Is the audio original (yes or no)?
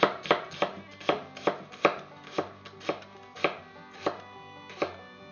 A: yes